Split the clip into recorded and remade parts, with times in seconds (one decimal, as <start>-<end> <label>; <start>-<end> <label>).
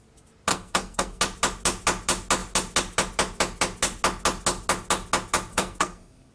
0.0-0.5 recorded; 0.5-1.2 remade; 1.2-5.5 recorded; 5.5-6.3 remade